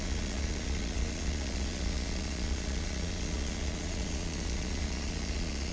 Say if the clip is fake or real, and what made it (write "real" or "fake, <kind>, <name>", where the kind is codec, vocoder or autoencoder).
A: fake, vocoder, Vocos